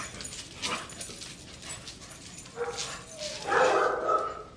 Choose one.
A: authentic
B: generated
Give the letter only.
A